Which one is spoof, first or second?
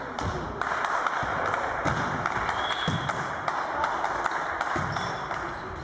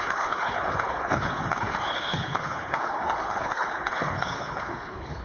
second